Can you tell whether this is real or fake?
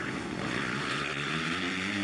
fake